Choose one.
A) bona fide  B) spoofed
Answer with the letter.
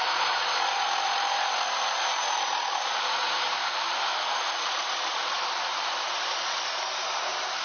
B